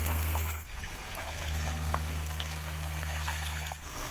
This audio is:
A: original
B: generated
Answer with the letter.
B